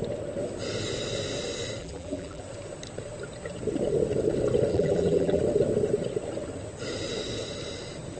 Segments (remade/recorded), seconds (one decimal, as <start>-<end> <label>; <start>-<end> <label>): 0.0-1.8 recorded; 1.8-2.4 remade; 2.4-4.7 recorded; 4.7-5.4 remade; 5.4-8.2 recorded